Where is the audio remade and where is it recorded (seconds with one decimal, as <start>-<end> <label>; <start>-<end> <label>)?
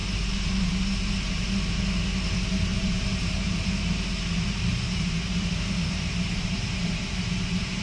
0.0-1.1 remade; 1.1-2.7 recorded; 2.7-3.7 remade; 3.7-4.7 recorded; 4.7-7.8 remade